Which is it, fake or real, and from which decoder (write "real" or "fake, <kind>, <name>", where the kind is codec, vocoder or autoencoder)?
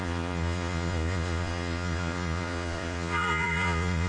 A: fake, vocoder, Vocos